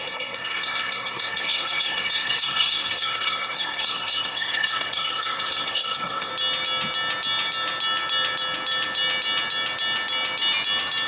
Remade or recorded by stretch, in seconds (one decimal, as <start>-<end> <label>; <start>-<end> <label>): 0.0-6.3 remade; 6.3-11.1 recorded